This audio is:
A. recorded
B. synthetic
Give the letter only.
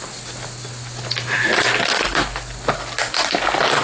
A